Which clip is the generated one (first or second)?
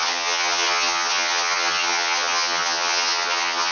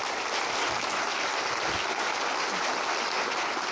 first